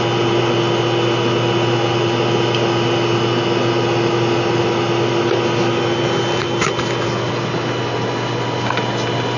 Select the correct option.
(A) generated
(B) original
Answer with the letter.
B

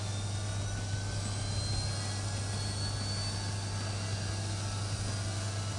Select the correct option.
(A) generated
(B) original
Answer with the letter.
B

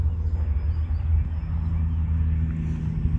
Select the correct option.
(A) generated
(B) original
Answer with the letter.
B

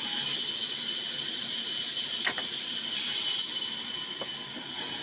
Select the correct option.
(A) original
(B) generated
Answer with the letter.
A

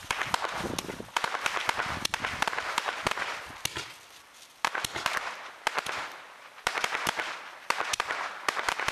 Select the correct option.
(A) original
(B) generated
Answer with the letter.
A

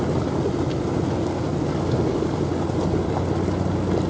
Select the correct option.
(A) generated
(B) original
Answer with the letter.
B